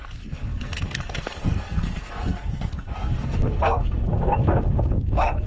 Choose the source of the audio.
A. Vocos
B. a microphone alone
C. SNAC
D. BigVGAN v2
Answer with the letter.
C